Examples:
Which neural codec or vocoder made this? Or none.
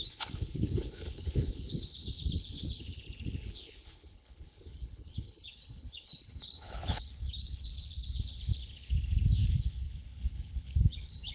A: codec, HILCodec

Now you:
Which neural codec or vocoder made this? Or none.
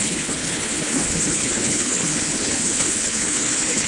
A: codec, HILCodec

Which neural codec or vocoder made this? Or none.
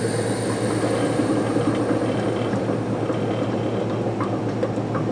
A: none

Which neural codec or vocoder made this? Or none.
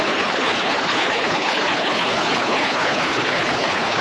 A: codec, HILCodec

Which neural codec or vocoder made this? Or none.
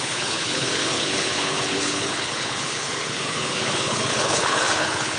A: codec, HILCodec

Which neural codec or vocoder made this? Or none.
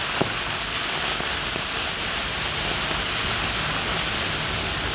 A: none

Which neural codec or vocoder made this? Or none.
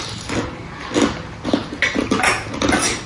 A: none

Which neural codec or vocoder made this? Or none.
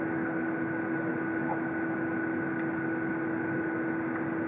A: none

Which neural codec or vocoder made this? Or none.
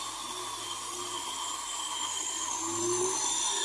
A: none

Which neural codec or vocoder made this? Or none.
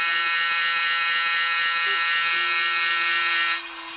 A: none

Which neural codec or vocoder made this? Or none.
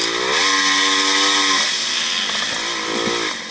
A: none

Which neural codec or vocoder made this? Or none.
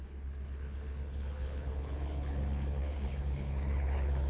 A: codec, HILCodec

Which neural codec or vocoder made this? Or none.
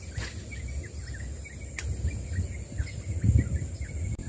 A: none